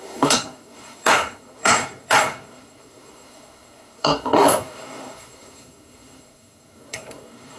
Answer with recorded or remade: remade